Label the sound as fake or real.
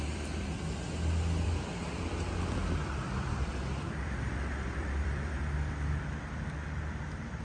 fake